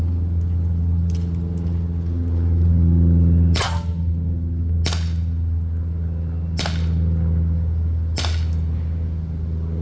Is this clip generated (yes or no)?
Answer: no